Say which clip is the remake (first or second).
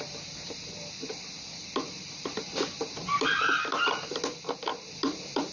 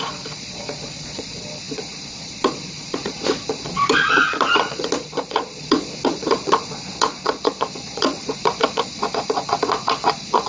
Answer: second